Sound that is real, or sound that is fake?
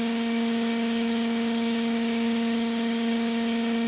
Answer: fake